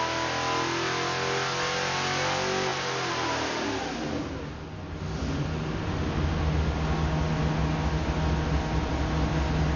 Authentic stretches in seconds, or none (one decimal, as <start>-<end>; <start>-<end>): 0.0-9.8